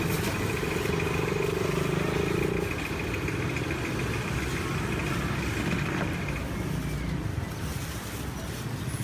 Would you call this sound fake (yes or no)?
no